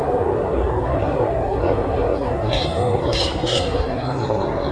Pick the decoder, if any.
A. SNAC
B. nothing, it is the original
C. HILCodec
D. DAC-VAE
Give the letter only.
A